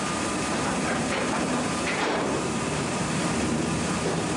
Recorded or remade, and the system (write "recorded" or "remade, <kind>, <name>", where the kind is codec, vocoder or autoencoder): remade, vocoder, BigVGAN v2